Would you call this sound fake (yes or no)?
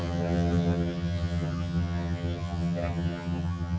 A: yes